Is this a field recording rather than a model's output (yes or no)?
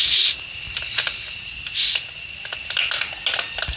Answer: yes